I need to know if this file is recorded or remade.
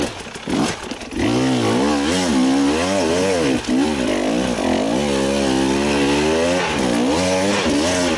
recorded